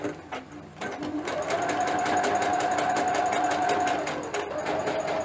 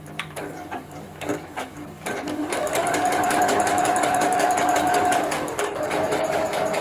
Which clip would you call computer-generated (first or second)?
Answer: second